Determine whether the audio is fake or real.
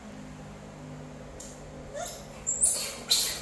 real